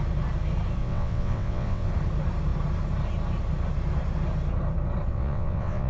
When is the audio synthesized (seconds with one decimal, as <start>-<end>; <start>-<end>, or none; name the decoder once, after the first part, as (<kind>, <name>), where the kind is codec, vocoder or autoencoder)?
0.8-1.9 (vocoder, WaveNeXt); 5.1-5.9